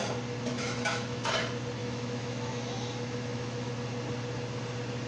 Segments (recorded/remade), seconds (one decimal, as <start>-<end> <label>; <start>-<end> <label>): 0.0-0.5 recorded; 0.5-1.3 remade; 1.3-1.8 recorded; 1.8-3.7 remade; 3.7-5.1 recorded

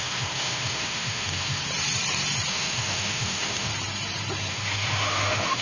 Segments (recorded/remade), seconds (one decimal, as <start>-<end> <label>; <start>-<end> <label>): 0.0-1.6 remade; 1.6-2.5 recorded; 2.5-3.7 remade; 3.7-4.5 recorded; 4.5-5.6 remade

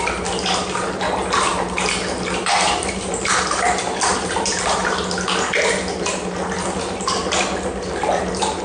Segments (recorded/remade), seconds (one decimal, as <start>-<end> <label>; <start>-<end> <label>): 0.0-8.6 recorded

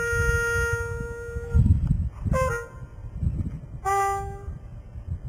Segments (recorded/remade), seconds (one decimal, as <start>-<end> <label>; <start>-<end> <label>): 0.0-5.3 recorded

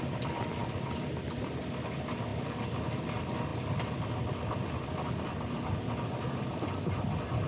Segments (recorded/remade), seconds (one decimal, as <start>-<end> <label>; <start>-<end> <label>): 0.0-7.5 recorded

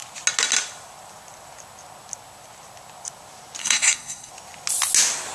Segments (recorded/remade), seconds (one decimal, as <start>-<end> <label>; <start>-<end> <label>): 0.0-3.6 recorded; 3.6-4.3 remade; 4.3-5.3 recorded

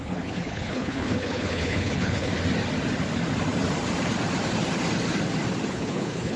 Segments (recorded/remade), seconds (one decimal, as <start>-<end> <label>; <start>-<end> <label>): 0.0-2.3 remade; 2.3-5.7 recorded; 5.7-6.4 remade